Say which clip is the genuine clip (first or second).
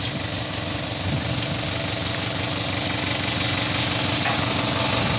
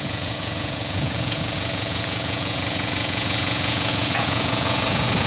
first